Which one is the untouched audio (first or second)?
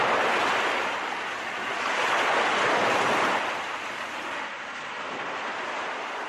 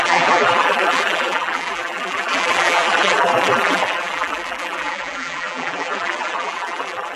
first